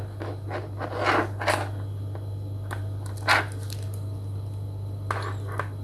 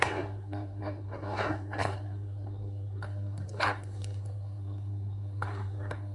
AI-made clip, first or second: second